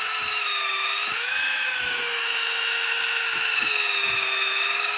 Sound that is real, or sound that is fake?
fake